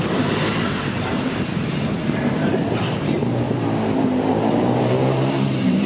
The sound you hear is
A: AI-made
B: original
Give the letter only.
A